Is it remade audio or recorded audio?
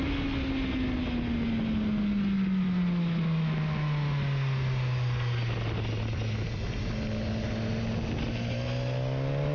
recorded